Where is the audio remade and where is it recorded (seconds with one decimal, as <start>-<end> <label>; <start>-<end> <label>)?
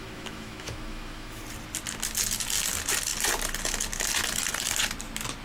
0.0-1.4 remade; 1.4-5.4 recorded